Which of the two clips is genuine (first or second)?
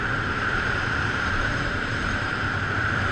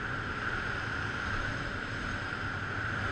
second